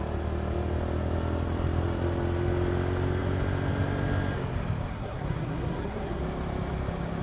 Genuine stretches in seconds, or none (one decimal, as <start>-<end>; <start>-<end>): 0.0-4.9; 6.2-7.2